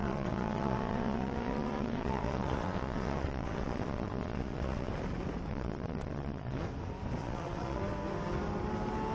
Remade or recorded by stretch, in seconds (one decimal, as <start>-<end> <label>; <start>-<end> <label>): 0.0-4.9 remade; 4.9-5.5 recorded; 5.5-6.6 remade; 6.6-7.2 recorded; 7.2-7.8 remade; 7.8-9.1 recorded